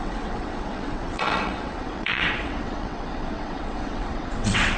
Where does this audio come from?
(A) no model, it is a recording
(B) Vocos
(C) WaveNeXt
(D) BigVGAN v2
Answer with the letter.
C